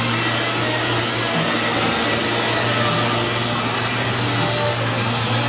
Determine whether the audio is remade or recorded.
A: recorded